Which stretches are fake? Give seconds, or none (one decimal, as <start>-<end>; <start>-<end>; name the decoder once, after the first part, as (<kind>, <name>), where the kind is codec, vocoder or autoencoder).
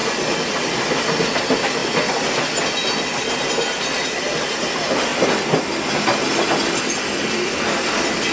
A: none